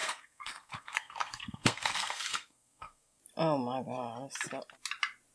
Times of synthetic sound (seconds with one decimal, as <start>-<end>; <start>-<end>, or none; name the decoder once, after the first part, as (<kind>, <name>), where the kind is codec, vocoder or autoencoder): 0.0-3.2 (codec, SNAC)